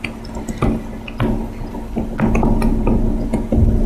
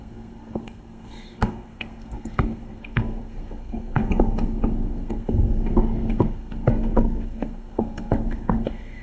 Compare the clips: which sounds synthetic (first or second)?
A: second